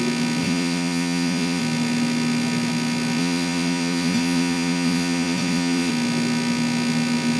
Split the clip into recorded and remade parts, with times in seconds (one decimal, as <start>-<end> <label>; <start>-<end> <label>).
0.0-0.4 recorded; 0.4-1.6 remade; 1.6-3.2 recorded; 3.2-5.9 remade; 5.9-7.4 recorded